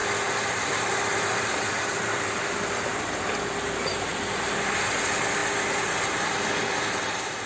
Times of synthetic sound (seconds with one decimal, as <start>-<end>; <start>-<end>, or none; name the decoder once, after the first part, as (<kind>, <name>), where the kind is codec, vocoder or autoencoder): 0.0-2.3 (vocoder, BigVGAN v2); 4.1-4.8